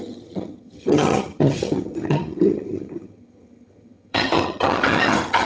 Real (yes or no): no